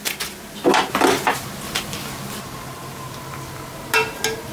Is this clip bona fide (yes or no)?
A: yes